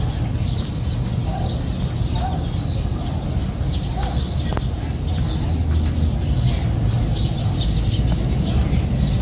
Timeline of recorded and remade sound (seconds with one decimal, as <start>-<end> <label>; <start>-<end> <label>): 0.0-9.2 recorded